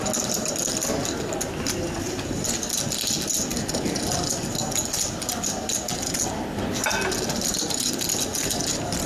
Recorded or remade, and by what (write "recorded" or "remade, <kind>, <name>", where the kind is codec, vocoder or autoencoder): recorded